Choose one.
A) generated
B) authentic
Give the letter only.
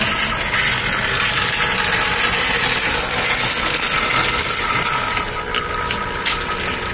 B